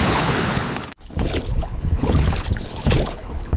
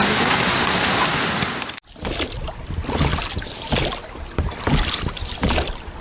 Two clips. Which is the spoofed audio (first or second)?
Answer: first